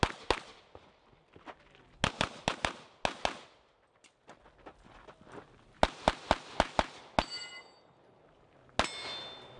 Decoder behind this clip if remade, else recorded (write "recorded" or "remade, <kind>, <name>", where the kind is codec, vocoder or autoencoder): recorded